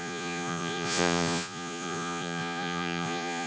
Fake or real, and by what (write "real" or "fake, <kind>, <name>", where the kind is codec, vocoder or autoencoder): fake, vocoder, Vocos